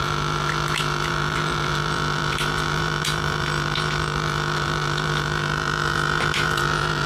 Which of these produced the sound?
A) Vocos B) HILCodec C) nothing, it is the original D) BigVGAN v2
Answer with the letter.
D